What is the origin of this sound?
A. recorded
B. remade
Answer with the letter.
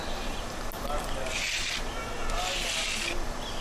A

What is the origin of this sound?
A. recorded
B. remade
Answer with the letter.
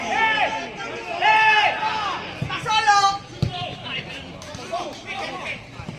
A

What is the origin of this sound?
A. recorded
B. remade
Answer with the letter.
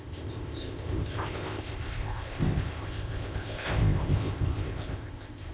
B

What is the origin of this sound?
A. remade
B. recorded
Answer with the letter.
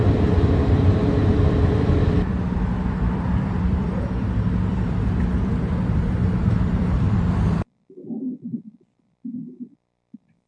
A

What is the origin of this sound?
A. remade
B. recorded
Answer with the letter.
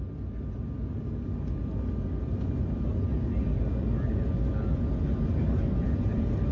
B